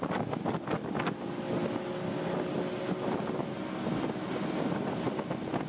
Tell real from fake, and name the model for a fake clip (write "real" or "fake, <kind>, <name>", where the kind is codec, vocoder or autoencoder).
real